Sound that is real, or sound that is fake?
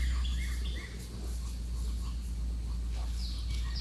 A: real